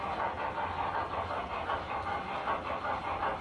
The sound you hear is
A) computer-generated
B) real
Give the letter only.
B